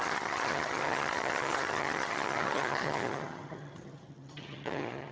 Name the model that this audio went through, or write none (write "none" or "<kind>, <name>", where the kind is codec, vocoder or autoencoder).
vocoder, HiFi-GAN